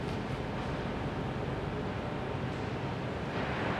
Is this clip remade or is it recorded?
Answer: recorded